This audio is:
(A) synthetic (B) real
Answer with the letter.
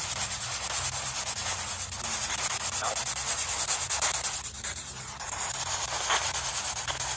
B